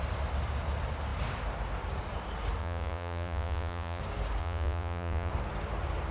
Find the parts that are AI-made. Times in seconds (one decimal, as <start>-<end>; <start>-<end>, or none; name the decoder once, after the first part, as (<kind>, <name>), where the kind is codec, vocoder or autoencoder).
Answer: 2.6-4.0 (vocoder, Vocos); 4.4-5.3